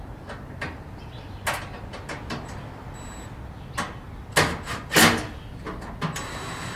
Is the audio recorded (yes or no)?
yes